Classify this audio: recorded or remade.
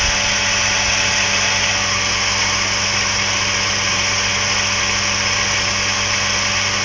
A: recorded